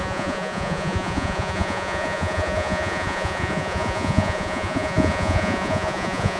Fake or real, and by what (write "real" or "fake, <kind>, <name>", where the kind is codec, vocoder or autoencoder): fake, vocoder, Vocos